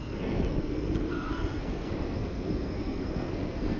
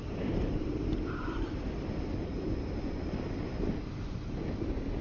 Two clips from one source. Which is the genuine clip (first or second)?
second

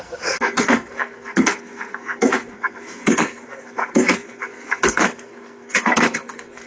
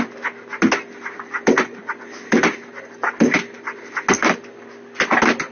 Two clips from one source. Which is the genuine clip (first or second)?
second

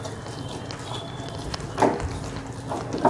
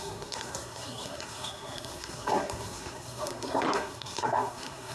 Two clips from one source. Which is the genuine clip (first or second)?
first